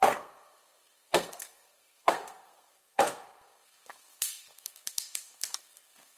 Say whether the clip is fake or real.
fake